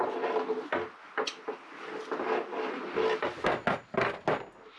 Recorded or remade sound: recorded